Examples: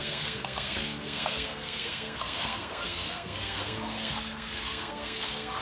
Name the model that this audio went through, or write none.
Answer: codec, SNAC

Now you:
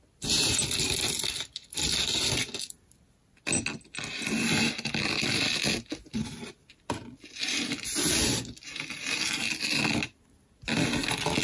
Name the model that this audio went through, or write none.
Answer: none